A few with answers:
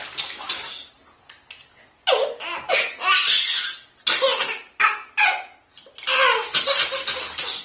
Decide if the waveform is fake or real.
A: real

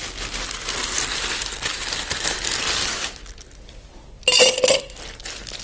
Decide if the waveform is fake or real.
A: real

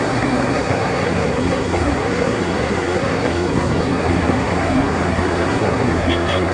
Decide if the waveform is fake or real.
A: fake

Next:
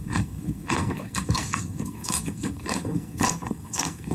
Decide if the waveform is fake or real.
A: fake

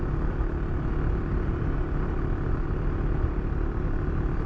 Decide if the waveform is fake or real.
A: real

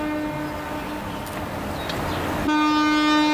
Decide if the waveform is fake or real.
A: real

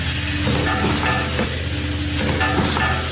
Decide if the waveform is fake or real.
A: real